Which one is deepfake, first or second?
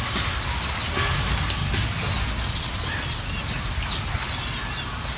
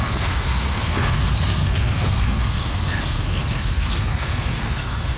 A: second